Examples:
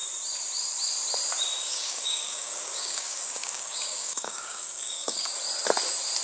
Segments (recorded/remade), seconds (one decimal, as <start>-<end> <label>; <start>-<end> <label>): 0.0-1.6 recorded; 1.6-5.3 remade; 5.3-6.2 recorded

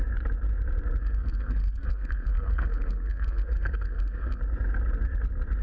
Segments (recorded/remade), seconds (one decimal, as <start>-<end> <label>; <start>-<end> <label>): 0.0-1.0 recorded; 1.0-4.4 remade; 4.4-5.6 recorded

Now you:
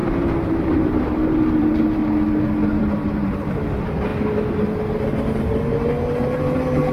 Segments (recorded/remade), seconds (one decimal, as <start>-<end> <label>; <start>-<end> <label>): 0.0-2.0 remade; 2.0-2.8 recorded; 2.8-4.1 remade; 4.1-5.4 recorded; 5.4-6.9 remade